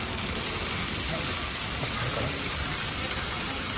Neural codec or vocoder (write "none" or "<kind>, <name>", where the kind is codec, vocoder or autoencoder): vocoder, BigVGAN v2